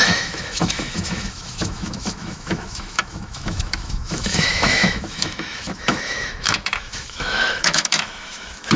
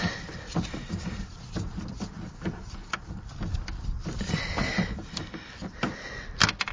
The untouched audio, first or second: second